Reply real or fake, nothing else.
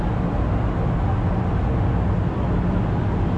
real